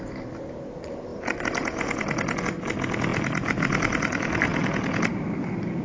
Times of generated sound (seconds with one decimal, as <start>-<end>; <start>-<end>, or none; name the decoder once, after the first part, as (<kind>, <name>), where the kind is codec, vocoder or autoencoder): none